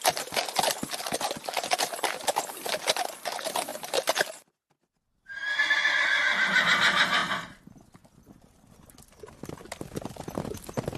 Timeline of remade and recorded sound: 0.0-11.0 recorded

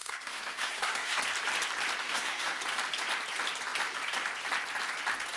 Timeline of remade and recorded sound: 0.0-1.2 remade; 1.2-2.0 recorded; 2.0-2.6 remade; 2.6-5.4 recorded

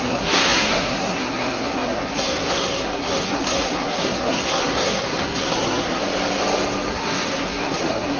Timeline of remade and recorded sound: 0.0-6.0 remade; 6.0-6.9 recorded; 6.9-8.2 remade

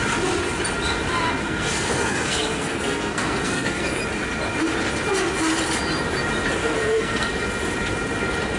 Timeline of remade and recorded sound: 0.0-1.4 recorded; 1.4-4.0 remade; 4.0-6.6 recorded; 6.6-7.3 remade; 7.3-8.6 recorded

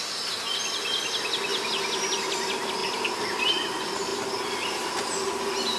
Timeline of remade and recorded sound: 0.0-5.8 recorded

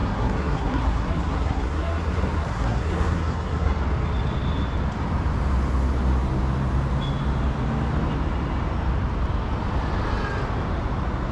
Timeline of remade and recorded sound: 0.0-3.8 remade; 3.8-11.3 recorded